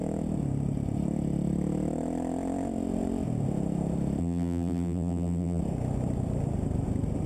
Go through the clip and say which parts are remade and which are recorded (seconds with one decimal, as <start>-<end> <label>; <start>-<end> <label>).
0.0-4.2 recorded; 4.2-5.6 remade; 5.6-7.3 recorded